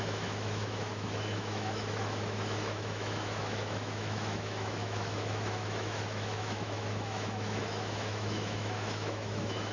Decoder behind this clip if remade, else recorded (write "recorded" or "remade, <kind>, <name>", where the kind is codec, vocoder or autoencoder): remade, autoencoder, DAC-VAE